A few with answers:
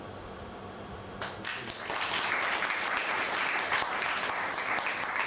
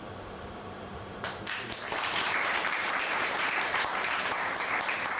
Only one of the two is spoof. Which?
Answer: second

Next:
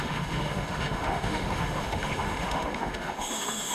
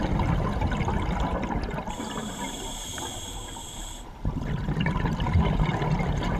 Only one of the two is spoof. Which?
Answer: first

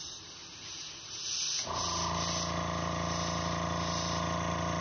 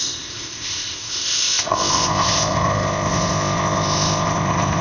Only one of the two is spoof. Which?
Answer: second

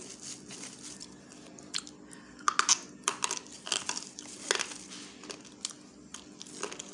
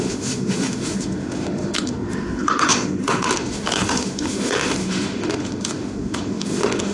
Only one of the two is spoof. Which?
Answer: second